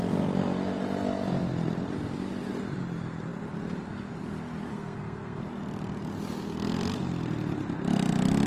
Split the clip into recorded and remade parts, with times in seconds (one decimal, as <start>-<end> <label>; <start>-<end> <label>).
0.0-4.7 recorded; 4.7-5.4 remade; 5.4-8.5 recorded

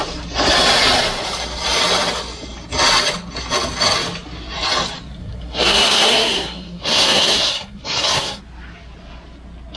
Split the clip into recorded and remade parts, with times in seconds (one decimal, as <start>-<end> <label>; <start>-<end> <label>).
0.0-5.2 recorded; 5.2-8.4 remade; 8.4-9.8 recorded

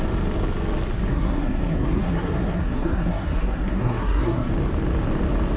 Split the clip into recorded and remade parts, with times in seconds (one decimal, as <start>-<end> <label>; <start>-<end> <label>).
0.0-1.1 recorded; 1.1-4.5 remade; 4.5-5.6 recorded

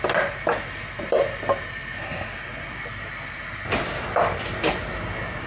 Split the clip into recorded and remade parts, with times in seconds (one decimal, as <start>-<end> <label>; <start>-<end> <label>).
0.0-5.5 recorded

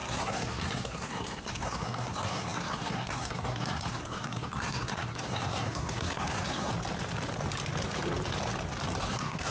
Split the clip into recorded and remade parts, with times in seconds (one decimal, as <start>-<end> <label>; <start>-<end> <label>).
0.0-6.7 remade; 6.7-9.0 recorded; 9.0-9.5 remade

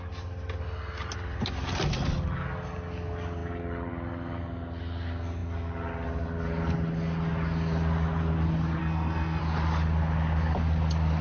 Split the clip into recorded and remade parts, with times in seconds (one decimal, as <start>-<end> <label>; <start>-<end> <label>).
0.0-8.8 recorded; 8.8-9.4 remade; 9.4-11.2 recorded